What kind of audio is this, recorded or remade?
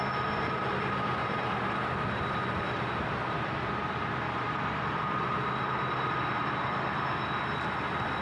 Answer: recorded